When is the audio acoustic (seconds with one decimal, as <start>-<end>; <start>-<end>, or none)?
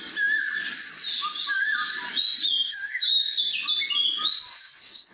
0.0-2.6; 3.4-4.5